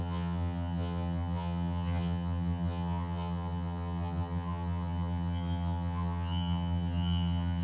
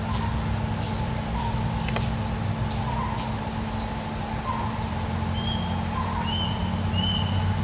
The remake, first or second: first